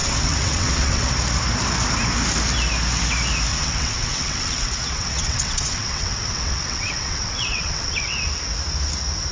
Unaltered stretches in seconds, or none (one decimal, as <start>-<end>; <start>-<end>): 1.1-3.5; 8.3-9.3